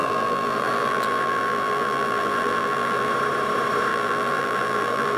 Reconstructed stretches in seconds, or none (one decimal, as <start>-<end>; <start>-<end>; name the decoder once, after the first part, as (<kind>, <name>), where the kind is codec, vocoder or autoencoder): 0.0-3.1 (vocoder, BigVGAN v2); 3.9-5.2